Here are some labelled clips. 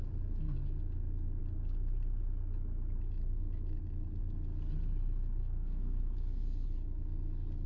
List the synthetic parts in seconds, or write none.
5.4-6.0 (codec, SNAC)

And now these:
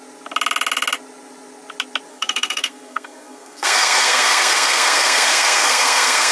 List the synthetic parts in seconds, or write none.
2.1-6.3 (codec, SNAC)

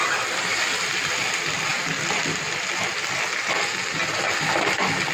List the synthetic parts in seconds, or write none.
none

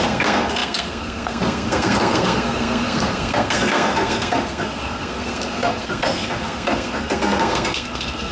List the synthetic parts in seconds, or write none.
0.0-8.3 (codec, SNAC)

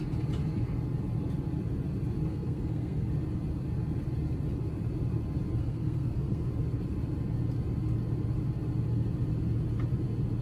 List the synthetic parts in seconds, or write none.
2.3-3.1 (codec, SNAC); 5.6-6.5